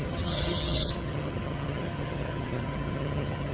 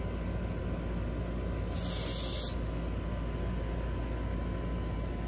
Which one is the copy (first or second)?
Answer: first